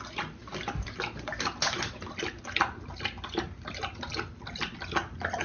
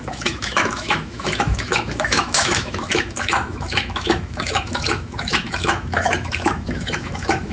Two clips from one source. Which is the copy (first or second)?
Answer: second